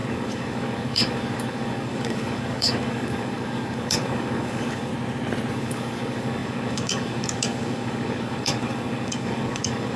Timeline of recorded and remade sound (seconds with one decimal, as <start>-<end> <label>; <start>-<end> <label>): 0.0-4.9 remade; 4.9-5.5 recorded; 5.5-10.0 remade